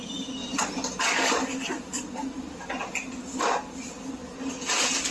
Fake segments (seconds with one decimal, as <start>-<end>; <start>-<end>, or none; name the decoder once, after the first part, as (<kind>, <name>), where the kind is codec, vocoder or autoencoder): 0.4-1.0 (vocoder, BigVGAN v2); 1.4-4.5